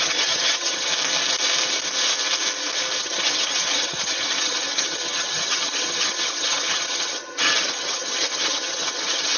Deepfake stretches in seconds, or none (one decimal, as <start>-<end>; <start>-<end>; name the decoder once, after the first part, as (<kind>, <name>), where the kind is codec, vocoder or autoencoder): 0.0-0.9 (vocoder, HiFi-GAN); 3.0-9.4